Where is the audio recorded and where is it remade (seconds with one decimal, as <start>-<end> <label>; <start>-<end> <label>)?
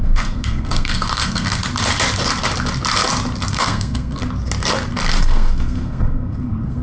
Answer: 0.0-1.6 remade; 1.6-3.5 recorded; 3.5-4.2 remade; 4.2-5.2 recorded; 5.2-6.8 remade